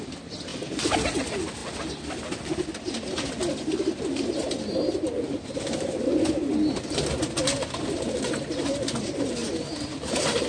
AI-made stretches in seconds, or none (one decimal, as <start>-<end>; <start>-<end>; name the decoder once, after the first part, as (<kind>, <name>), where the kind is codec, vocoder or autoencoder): none